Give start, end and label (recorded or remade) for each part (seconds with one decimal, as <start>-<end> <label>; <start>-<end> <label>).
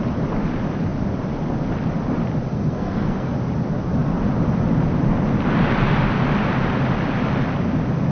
0.0-2.5 recorded; 2.5-3.3 remade; 3.3-8.1 recorded